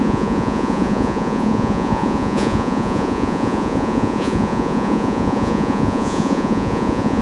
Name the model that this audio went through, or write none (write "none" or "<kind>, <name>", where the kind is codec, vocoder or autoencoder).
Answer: vocoder, Vocos